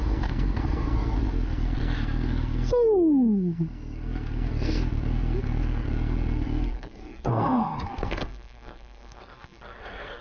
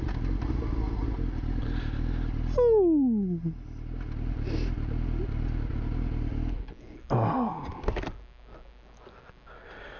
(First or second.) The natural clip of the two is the second